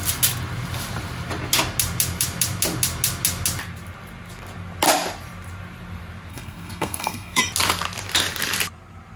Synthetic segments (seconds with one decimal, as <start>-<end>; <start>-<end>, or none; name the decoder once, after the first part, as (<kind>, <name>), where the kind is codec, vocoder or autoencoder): 6.3-7.4 (codec, SNAC)